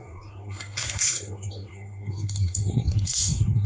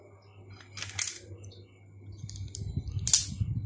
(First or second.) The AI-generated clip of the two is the first